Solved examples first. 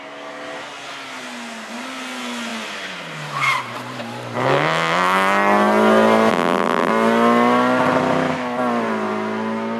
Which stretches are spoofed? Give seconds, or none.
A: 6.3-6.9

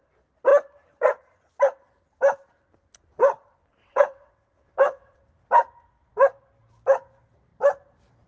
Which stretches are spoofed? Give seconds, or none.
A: 3.8-5.2